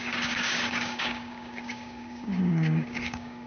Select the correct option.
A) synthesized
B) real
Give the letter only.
A